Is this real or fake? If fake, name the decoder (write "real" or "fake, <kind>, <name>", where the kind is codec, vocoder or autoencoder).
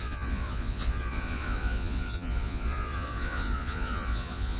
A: fake, vocoder, Vocos